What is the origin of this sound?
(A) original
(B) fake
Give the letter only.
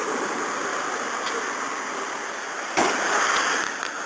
A